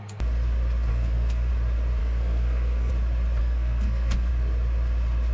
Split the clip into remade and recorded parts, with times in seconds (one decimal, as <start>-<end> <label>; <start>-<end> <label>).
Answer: 0.0-0.9 recorded; 0.9-1.5 remade; 1.5-2.0 recorded; 2.0-2.9 remade; 2.9-3.4 recorded; 3.4-4.3 remade; 4.3-5.3 recorded